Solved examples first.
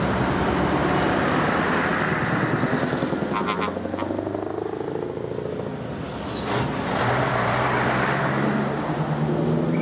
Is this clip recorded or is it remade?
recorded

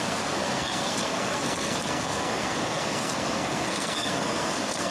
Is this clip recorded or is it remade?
remade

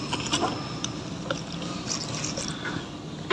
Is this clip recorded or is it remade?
recorded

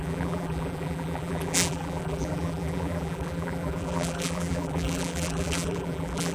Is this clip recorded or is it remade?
remade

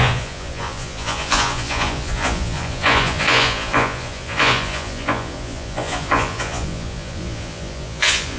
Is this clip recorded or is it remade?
remade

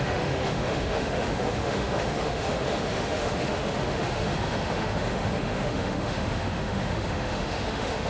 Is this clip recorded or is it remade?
remade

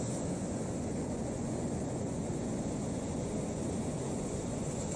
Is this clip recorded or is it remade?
remade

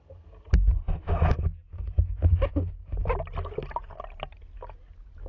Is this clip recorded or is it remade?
recorded